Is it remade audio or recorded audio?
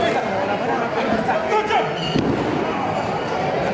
recorded